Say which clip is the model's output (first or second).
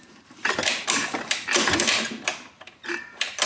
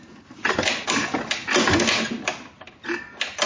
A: first